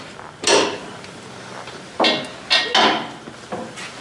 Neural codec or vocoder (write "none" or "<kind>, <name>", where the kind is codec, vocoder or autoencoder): none